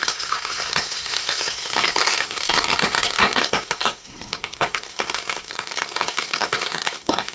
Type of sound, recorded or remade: remade